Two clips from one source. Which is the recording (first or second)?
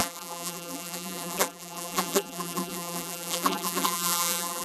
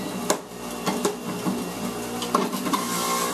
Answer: second